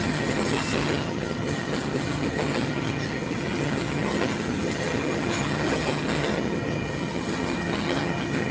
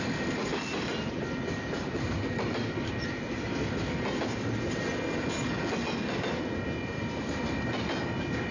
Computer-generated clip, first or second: first